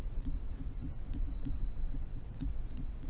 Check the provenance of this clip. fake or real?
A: fake